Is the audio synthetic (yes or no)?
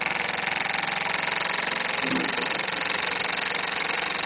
no